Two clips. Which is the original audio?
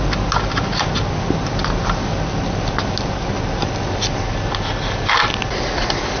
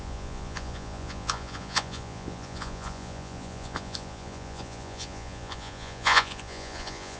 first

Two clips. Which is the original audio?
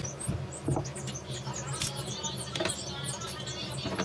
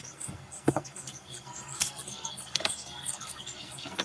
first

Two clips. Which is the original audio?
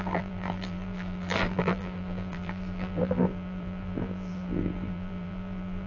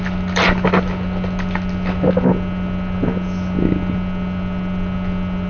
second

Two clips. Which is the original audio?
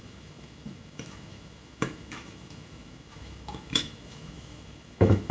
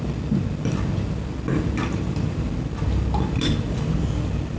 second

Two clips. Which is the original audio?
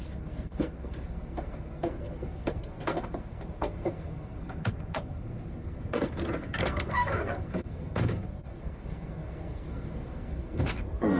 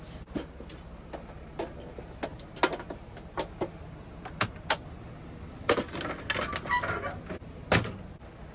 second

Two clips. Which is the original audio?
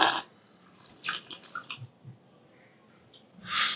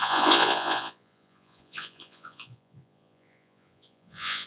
first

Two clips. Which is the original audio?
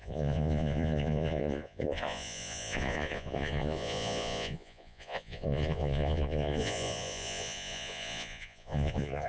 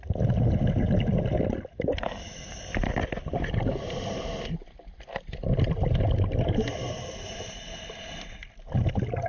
second